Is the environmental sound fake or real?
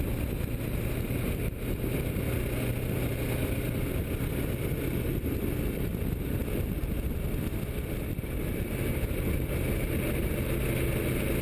real